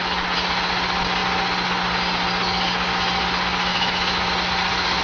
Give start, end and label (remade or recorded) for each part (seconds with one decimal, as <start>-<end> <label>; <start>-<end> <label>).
0.0-3.7 recorded; 3.7-4.3 remade; 4.3-5.0 recorded